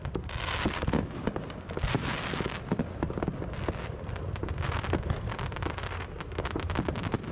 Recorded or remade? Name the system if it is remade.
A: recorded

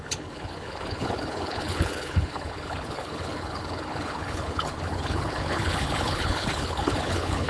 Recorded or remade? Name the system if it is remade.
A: remade, codec, HILCodec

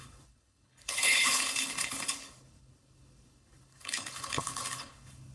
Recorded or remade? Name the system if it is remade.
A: remade, codec, HILCodec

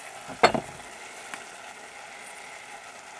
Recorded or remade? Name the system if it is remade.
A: recorded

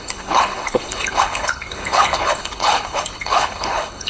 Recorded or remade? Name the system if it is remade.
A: remade, codec, HILCodec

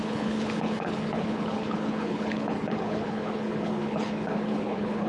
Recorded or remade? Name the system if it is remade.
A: remade, codec, HILCodec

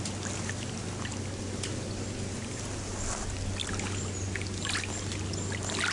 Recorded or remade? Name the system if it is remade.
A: recorded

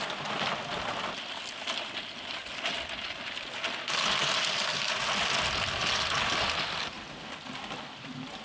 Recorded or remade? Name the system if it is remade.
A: recorded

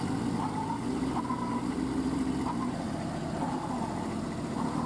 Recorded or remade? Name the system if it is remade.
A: recorded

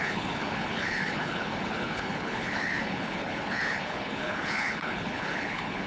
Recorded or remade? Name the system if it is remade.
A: remade, codec, HILCodec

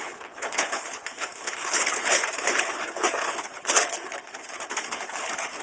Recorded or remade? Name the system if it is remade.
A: remade, codec, HILCodec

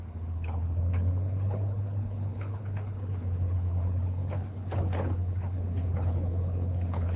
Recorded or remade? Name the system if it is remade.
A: remade, codec, HILCodec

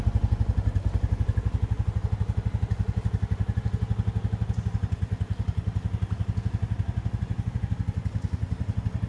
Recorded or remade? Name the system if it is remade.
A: recorded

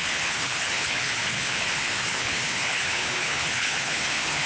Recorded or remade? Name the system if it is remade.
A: remade, codec, HILCodec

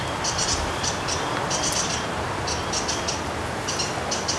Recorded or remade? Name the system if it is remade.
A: recorded